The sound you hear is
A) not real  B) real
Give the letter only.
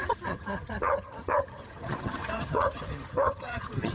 A